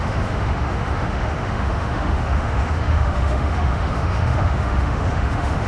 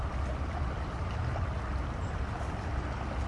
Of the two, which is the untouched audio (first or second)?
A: second